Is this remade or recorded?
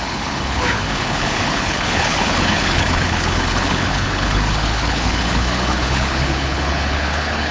remade